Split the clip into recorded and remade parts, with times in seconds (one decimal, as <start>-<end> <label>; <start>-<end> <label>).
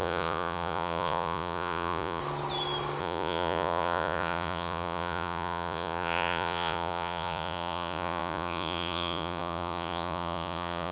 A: 0.0-2.2 remade; 2.2-3.0 recorded; 3.0-10.9 remade